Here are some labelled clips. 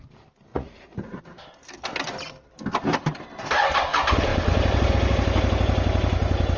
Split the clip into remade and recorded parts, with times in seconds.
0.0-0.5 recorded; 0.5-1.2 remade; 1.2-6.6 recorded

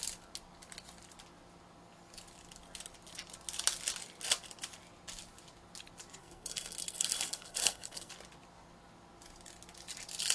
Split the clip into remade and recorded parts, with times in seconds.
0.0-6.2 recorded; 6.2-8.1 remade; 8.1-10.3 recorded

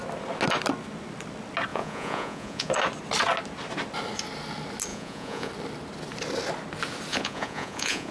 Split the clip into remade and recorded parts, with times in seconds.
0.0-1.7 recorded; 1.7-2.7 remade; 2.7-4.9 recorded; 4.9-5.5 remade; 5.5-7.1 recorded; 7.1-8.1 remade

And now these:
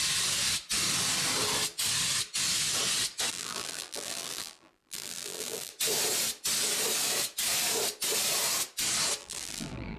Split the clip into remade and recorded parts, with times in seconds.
0.0-3.3 recorded; 3.3-5.7 remade; 5.7-9.2 recorded; 9.2-10.0 remade

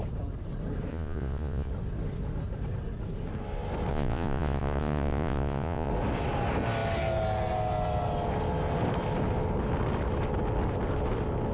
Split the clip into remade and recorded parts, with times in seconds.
0.0-0.9 recorded; 0.9-1.7 remade; 1.7-3.9 recorded; 3.9-5.9 remade; 5.9-11.5 recorded

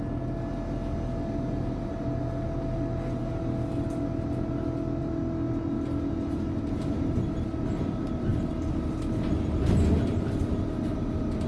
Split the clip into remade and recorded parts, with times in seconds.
0.0-11.5 recorded